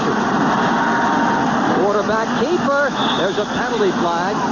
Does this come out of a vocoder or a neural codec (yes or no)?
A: no